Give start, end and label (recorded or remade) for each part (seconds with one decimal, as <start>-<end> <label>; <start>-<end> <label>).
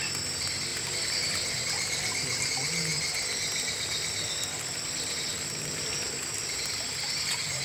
0.0-0.7 recorded; 0.7-2.5 remade; 2.5-7.6 recorded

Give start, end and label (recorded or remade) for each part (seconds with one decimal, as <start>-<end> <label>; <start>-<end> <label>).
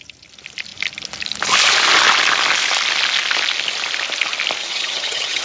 0.0-4.6 recorded; 4.6-5.4 remade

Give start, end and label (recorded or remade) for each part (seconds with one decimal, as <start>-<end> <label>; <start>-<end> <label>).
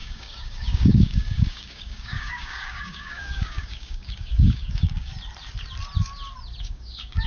0.0-5.1 remade; 5.1-6.6 recorded; 6.6-7.3 remade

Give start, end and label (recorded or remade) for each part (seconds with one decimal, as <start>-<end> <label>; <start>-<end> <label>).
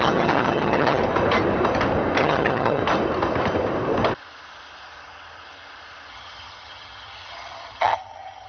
0.0-1.0 remade; 1.0-2.2 recorded; 2.2-2.8 remade; 2.8-6.1 recorded; 6.1-8.5 remade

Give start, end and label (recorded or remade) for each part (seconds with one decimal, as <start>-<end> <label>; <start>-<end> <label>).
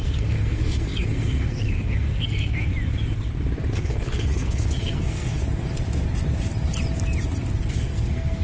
0.0-2.7 remade; 2.7-3.7 recorded; 3.7-5.4 remade; 5.4-7.7 recorded; 7.7-8.4 remade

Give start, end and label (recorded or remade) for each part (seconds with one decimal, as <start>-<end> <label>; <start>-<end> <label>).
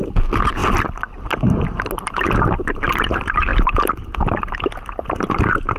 0.0-5.8 recorded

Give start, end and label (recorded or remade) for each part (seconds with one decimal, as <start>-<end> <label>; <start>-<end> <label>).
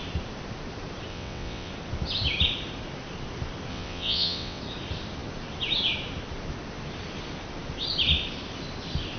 0.0-1.1 recorded; 1.1-1.7 remade; 1.7-3.7 recorded; 3.7-4.6 remade; 4.6-9.2 recorded